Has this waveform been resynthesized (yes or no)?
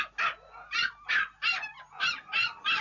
no